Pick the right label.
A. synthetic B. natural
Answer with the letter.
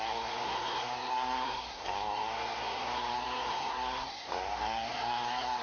A